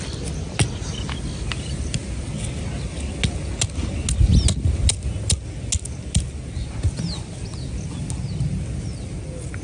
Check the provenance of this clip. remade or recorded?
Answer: recorded